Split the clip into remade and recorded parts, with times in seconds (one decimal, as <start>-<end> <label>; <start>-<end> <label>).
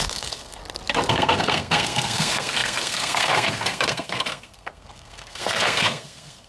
0.0-0.6 remade; 0.6-1.1 recorded; 1.1-6.5 remade